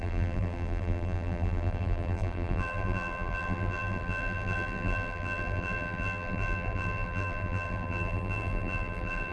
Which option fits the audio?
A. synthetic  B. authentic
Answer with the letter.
A